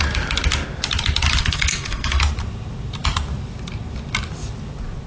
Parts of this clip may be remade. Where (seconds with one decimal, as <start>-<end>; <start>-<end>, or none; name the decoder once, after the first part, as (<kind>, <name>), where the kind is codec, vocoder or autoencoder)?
1.4-2.2 (codec, SNAC)